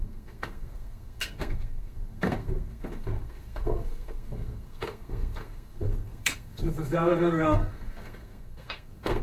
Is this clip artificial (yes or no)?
yes